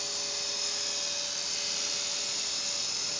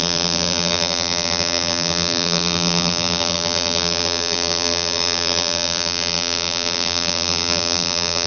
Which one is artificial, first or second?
second